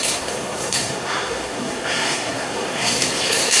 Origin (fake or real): fake